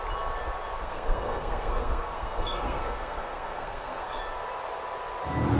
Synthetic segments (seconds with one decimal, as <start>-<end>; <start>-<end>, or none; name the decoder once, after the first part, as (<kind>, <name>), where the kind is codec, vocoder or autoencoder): 0.8-4.2 (codec, SNAC)